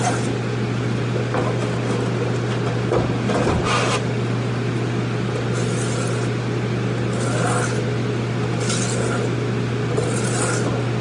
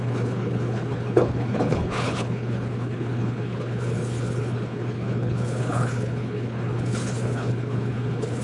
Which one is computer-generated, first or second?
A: second